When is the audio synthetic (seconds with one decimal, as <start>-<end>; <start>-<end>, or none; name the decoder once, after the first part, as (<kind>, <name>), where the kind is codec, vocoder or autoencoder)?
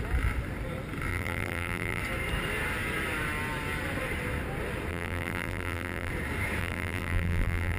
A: 1.1-2.0 (vocoder, BigVGAN v2); 4.9-6.1; 6.6-7.8